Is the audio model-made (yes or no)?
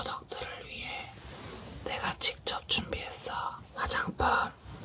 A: no